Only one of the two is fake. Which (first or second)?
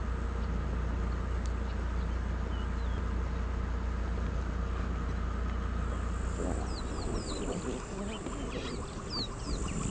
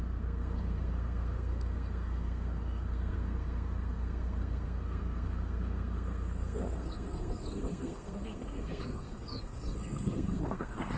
second